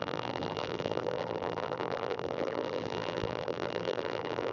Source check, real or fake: fake